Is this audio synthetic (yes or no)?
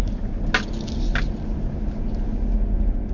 no